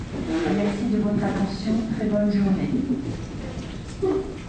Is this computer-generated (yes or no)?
no